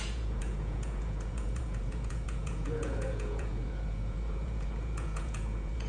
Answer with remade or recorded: remade